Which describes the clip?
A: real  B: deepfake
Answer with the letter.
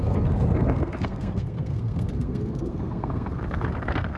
B